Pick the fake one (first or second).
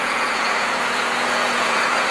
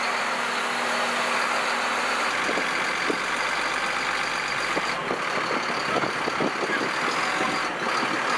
first